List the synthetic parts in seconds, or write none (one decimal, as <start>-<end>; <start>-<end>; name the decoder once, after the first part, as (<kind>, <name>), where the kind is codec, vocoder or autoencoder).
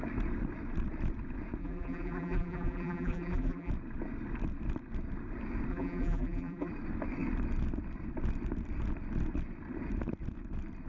1.6-3.7 (vocoder, BigVGAN v2); 5.7-6.7